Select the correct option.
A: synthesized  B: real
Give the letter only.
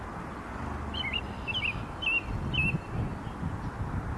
B